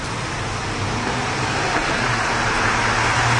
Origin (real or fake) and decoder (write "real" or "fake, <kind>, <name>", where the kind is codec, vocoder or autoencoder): real